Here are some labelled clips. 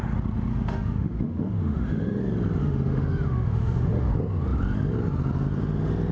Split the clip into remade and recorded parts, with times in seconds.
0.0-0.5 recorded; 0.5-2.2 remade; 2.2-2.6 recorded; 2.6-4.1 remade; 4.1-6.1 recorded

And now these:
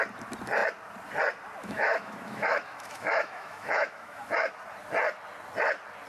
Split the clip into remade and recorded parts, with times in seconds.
0.0-1.6 recorded; 1.6-4.5 remade; 4.5-6.1 recorded

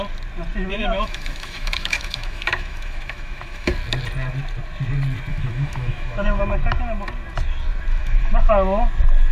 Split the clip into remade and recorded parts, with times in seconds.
0.0-0.7 recorded; 0.7-3.7 remade; 3.7-5.3 recorded; 5.3-6.4 remade; 6.4-7.9 recorded; 7.9-8.5 remade; 8.5-9.3 recorded

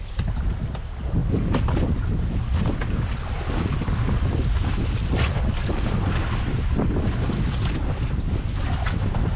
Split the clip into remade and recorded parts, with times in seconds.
0.0-9.4 recorded

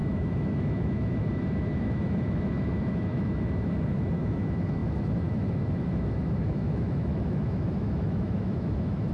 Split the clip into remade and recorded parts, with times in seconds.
0.0-9.1 remade

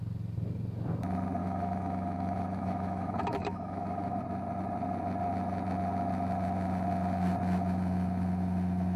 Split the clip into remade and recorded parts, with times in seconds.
0.0-1.4 recorded; 1.4-4.2 remade; 4.2-9.0 recorded

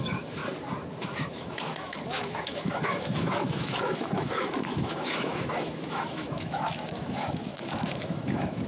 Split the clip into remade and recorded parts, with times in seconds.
0.0-0.4 remade; 0.4-1.0 recorded; 1.0-8.7 remade

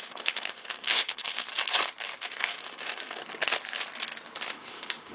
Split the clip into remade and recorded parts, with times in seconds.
0.0-1.5 remade; 1.5-2.2 recorded; 2.2-3.2 remade; 3.2-4.5 recorded; 4.5-5.1 remade